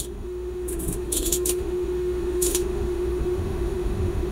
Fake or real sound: fake